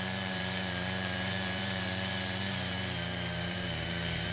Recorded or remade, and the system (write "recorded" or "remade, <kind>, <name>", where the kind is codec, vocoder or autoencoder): remade, vocoder, BigVGAN v2